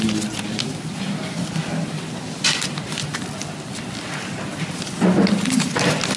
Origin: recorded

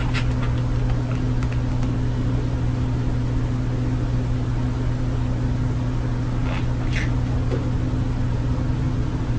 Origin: recorded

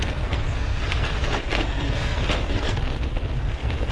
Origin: remade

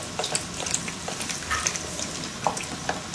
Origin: recorded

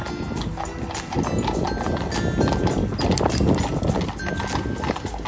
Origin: recorded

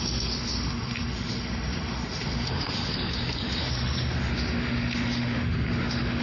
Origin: remade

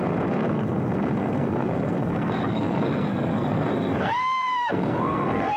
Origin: remade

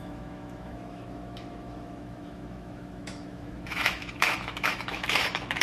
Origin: remade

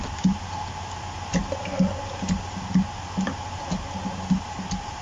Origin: recorded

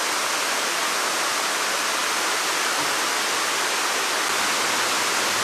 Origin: recorded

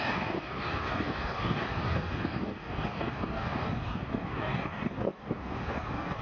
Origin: remade